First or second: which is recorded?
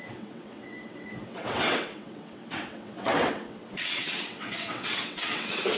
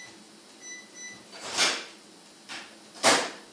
second